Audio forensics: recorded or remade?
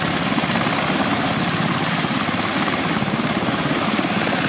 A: recorded